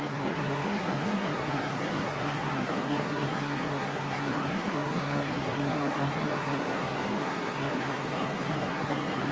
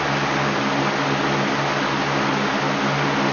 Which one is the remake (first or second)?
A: first